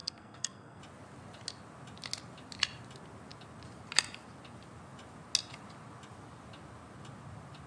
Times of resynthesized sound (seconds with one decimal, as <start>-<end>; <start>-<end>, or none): 0.0-0.8